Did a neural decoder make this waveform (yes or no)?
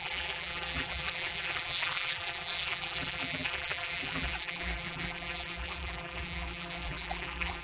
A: yes